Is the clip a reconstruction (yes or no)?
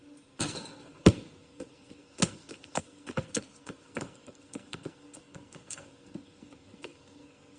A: yes